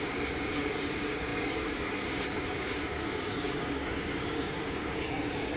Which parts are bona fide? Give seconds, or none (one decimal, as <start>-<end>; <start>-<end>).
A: none